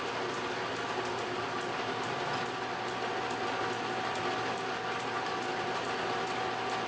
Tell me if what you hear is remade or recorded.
recorded